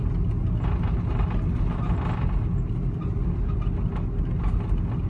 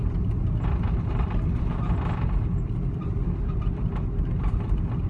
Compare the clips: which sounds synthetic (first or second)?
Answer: second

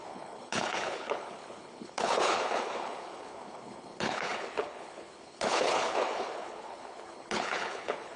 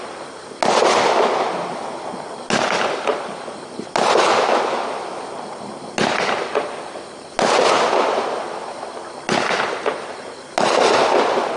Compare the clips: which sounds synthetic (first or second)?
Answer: first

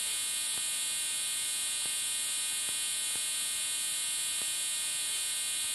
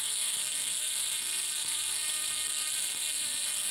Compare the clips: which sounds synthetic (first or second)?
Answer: second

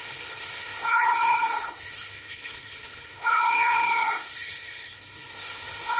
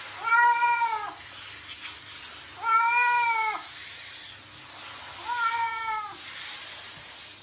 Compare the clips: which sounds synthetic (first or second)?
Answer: first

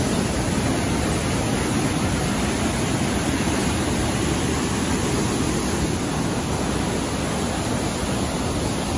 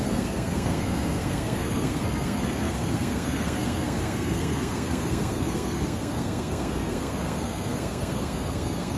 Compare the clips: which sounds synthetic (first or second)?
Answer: second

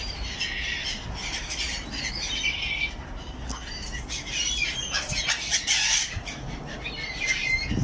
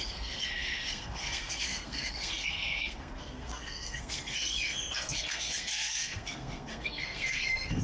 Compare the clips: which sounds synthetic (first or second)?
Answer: second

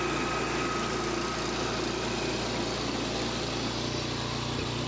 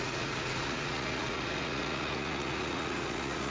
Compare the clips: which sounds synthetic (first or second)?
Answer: second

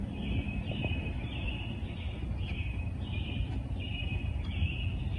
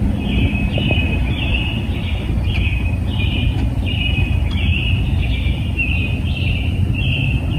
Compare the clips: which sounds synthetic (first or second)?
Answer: first